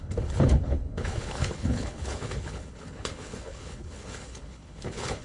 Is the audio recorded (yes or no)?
no